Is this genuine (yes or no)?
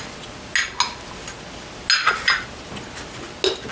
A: yes